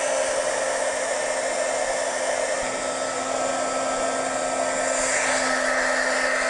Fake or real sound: real